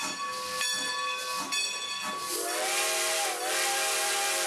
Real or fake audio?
real